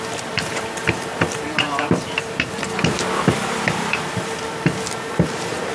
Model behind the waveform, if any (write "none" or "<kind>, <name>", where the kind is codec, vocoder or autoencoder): vocoder, BigVGAN v2